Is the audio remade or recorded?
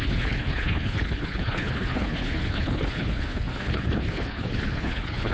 remade